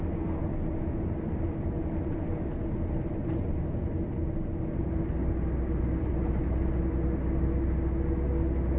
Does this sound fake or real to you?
real